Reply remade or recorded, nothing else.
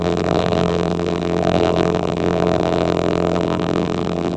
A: remade